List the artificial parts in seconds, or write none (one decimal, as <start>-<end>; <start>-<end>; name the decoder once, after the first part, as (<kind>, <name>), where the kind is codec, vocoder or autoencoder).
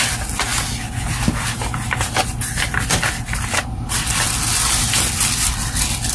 none